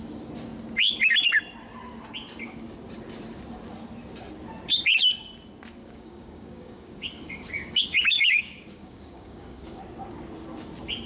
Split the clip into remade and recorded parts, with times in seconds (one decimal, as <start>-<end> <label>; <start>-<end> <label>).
0.0-5.8 recorded; 5.8-9.8 remade; 9.8-11.1 recorded